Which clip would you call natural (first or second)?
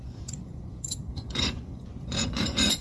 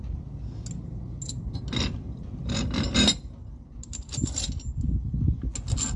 second